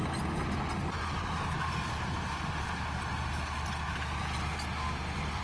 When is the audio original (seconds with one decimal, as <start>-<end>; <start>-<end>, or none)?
0.0-5.4